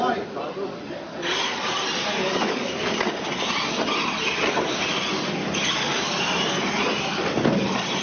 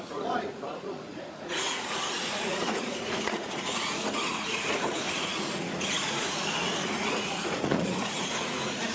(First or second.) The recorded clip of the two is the first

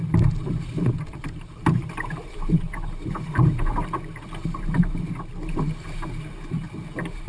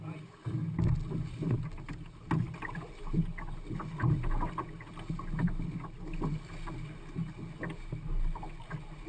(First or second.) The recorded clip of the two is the second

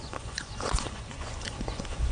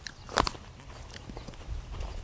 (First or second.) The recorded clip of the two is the second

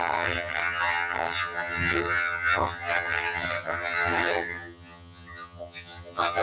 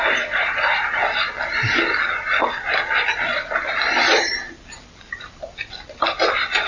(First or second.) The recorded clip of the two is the second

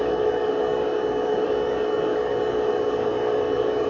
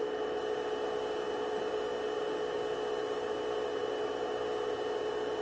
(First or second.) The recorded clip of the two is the second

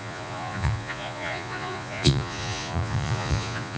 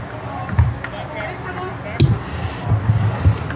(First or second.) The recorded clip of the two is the second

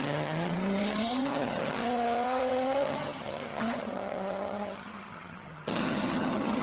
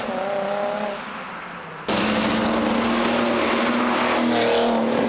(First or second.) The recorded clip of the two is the second